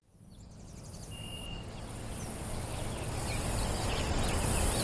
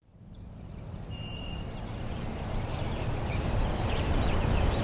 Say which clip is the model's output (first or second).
second